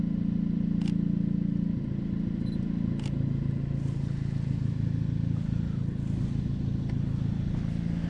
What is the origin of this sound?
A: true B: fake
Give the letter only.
A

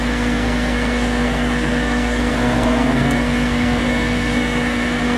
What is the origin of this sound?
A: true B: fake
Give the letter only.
B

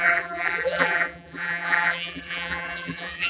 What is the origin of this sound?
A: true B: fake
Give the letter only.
B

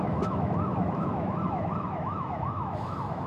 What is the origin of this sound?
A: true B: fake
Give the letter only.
B